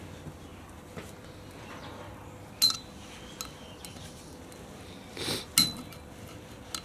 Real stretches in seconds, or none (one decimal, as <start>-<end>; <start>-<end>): 0.0-6.8